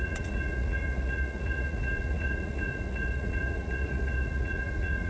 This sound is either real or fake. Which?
fake